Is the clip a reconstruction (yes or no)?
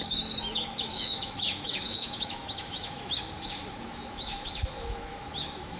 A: yes